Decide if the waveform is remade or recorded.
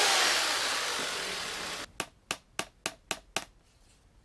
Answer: recorded